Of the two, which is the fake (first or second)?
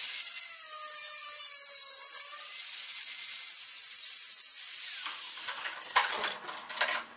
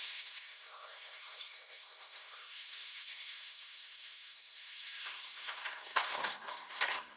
second